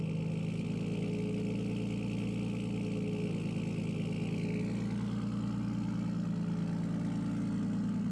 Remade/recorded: recorded